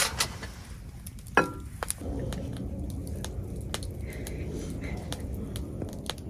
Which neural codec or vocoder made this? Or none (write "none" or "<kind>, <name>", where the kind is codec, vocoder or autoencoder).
none